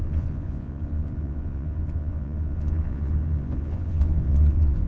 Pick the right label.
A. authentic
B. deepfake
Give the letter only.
B